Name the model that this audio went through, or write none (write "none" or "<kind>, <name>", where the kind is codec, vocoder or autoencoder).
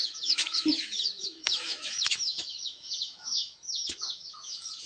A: autoencoder, DAC-VAE